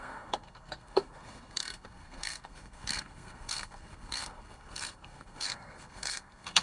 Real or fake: fake